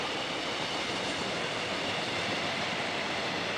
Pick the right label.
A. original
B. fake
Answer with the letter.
A